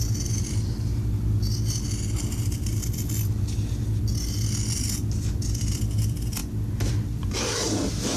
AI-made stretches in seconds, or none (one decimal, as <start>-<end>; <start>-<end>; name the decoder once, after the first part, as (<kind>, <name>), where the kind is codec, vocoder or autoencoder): none